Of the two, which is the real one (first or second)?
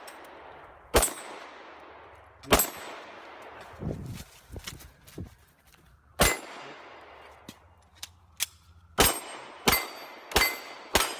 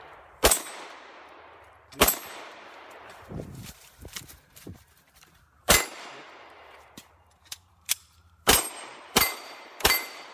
first